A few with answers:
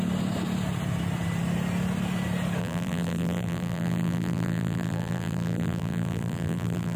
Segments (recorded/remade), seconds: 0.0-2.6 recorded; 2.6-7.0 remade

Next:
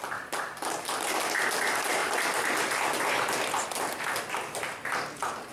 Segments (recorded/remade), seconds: 0.0-5.5 recorded

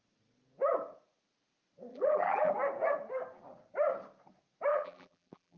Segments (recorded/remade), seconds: 0.0-1.9 recorded; 1.9-2.5 remade; 2.5-4.7 recorded; 4.7-5.6 remade

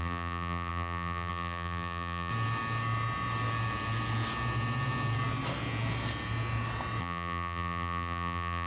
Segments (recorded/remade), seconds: 0.0-2.3 remade; 2.3-7.0 recorded; 7.0-8.7 remade

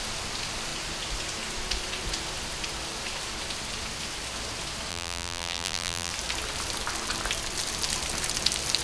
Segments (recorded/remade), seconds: 0.0-4.9 recorded; 4.9-6.1 remade; 6.1-8.8 recorded

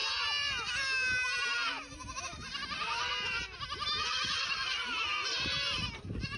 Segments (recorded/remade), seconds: 0.0-2.2 recorded; 2.2-3.1 remade; 3.1-4.1 recorded; 4.1-6.4 remade